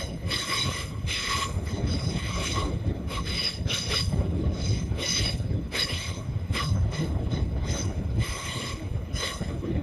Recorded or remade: remade